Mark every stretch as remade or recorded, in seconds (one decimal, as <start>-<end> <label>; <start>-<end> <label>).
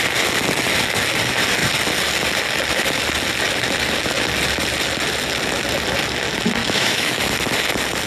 0.0-6.6 recorded; 6.6-7.2 remade; 7.2-8.1 recorded